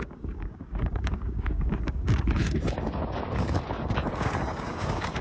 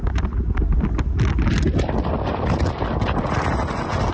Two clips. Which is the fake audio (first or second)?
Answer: first